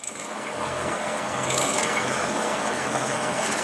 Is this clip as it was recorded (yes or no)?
no